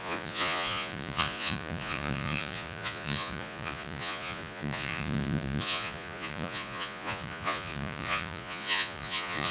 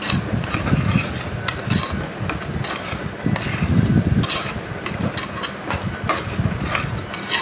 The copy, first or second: first